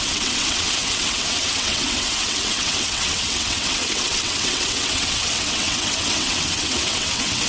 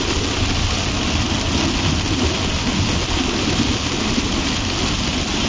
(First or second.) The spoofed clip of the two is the first